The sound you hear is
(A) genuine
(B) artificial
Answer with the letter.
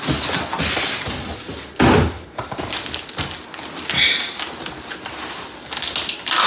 A